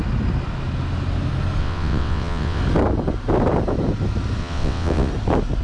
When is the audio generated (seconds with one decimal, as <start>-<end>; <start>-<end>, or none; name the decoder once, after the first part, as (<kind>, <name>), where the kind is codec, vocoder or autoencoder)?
1.6-2.6 (vocoder, WaveNeXt); 4.4-5.1